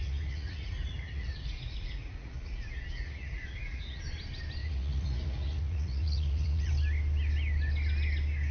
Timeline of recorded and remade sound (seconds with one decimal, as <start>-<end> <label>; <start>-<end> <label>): 0.0-4.0 remade; 4.0-4.6 recorded; 4.6-6.7 remade; 6.7-8.5 recorded